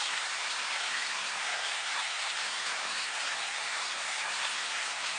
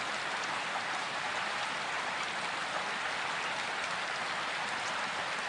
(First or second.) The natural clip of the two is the second